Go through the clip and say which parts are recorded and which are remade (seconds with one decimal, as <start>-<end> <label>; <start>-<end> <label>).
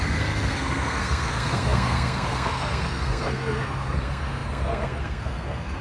0.0-5.8 remade